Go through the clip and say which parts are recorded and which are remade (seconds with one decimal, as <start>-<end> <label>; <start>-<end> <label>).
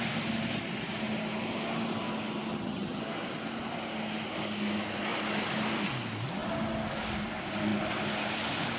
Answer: 0.0-2.5 recorded; 2.5-3.0 remade; 3.0-8.8 recorded